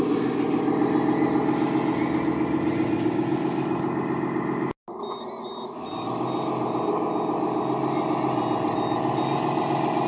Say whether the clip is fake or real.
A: real